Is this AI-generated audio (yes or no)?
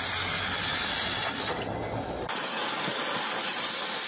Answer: no